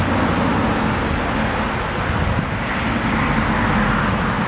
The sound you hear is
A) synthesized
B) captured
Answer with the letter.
B